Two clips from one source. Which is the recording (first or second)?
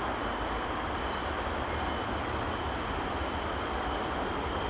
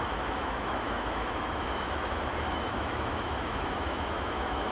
first